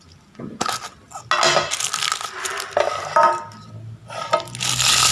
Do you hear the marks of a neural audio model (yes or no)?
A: no